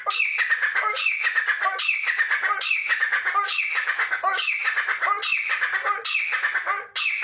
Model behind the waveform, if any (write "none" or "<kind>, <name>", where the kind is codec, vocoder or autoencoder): none